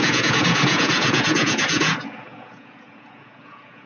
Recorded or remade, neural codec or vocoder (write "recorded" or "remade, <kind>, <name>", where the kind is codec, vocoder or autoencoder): remade, vocoder, Vocos